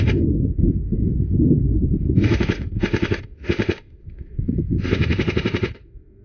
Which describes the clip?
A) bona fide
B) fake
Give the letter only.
B